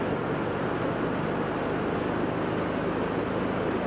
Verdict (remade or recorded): recorded